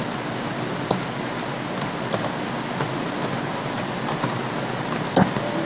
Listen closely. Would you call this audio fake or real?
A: real